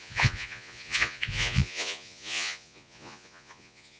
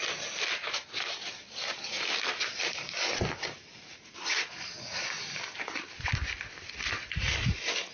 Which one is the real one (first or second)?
second